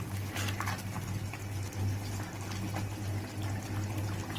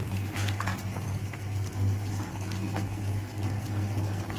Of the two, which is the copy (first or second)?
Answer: second